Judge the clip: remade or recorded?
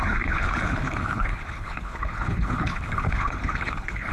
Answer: remade